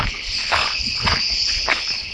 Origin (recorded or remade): remade